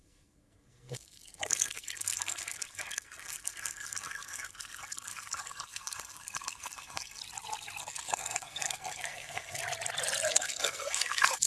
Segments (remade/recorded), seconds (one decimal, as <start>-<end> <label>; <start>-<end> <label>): 0.0-7.2 remade; 7.2-7.8 recorded; 7.8-9.6 remade; 9.6-10.3 recorded; 10.3-11.5 remade